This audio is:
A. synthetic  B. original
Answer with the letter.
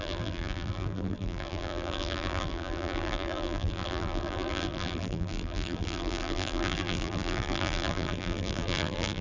A